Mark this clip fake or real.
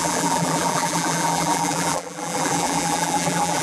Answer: fake